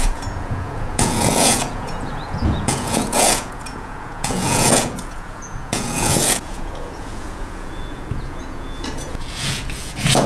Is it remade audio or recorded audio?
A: remade